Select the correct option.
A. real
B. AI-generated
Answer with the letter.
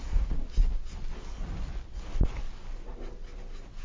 A